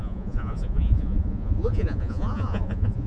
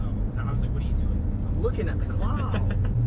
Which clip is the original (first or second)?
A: second